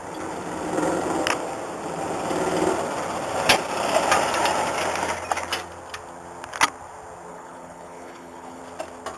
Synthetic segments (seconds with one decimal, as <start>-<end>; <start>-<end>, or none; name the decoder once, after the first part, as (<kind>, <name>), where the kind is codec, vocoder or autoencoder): 7.3-8.6 (codec, HILCodec)